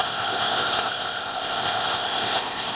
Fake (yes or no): yes